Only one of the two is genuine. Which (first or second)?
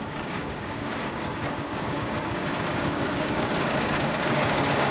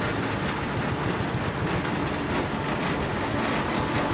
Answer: second